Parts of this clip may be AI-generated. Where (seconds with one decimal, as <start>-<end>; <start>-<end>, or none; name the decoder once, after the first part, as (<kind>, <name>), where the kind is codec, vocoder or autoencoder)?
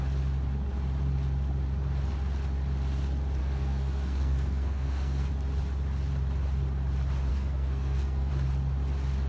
3.4-5.3 (codec, SNAC); 7.3-8.3